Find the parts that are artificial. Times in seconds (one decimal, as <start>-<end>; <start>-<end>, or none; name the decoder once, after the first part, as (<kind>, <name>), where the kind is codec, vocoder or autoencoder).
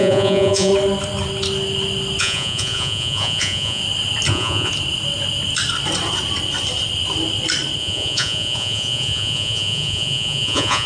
0.0-0.7 (vocoder, Vocos); 2.2-3.8; 4.3-4.7; 7.8-10.9